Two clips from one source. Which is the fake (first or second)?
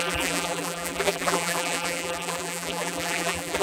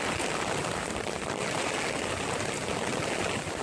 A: first